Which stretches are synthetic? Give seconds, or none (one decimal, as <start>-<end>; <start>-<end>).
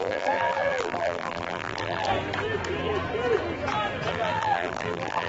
0.0-2.1; 4.1-5.3